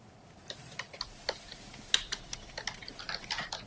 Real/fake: real